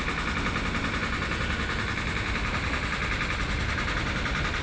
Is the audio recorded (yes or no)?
yes